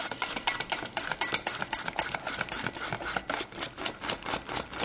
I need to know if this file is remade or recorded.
recorded